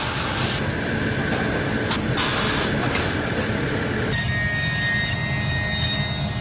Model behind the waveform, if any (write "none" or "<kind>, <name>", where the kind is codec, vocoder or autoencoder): none